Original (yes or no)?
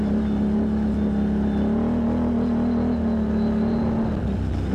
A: yes